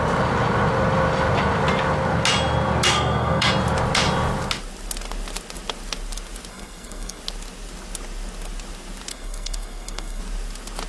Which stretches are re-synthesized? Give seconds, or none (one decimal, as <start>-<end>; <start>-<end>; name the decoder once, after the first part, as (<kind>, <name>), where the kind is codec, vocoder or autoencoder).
2.9-3.5 (codec, SNAC); 6.5-7.2; 9.1-10.2